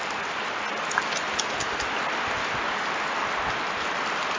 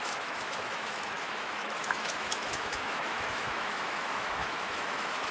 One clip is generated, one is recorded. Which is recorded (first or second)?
first